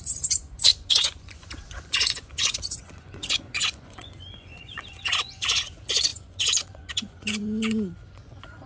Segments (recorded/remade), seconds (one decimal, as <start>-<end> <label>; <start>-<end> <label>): 0.0-8.7 remade